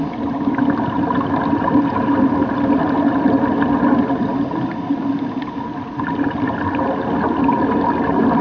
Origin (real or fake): real